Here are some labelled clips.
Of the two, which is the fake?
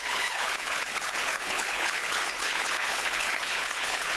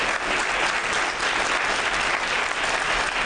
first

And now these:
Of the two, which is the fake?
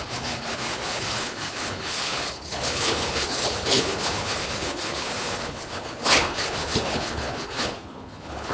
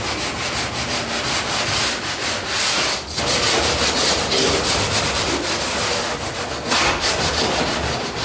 first